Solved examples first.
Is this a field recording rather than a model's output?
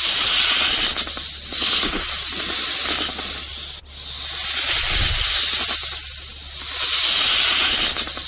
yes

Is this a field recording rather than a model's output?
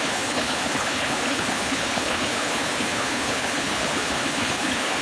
no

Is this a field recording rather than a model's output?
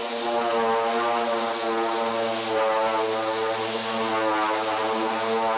yes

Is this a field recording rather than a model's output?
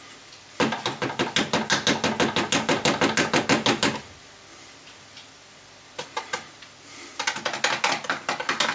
yes